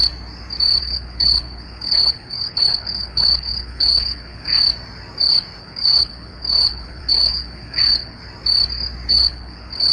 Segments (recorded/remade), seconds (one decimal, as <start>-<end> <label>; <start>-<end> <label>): 0.0-0.8 recorded; 0.8-4.5 remade; 4.5-5.6 recorded; 5.6-8.2 remade; 8.2-9.1 recorded; 9.1-9.9 remade